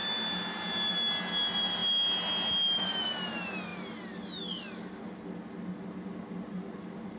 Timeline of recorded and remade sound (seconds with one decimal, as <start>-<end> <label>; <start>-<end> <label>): 0.0-7.2 recorded